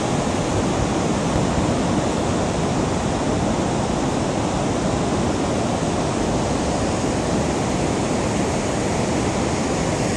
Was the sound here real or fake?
real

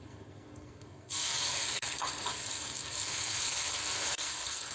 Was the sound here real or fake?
fake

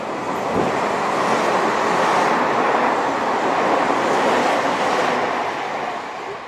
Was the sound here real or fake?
real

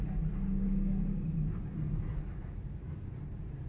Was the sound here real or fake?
real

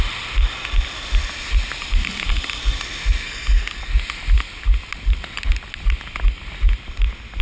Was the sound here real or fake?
real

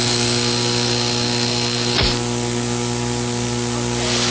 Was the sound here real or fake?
real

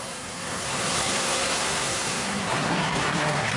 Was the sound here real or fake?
fake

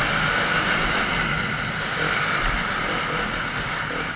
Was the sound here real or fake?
real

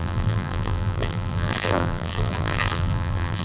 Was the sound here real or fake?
fake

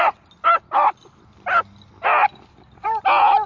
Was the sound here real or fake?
real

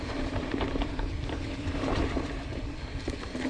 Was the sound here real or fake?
fake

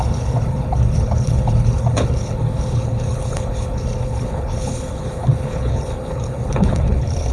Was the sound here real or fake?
fake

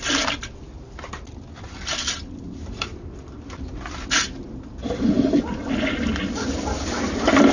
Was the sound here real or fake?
real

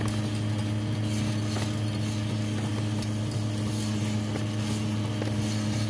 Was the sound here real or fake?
real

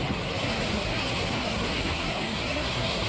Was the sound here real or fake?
fake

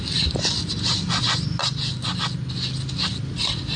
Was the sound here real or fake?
real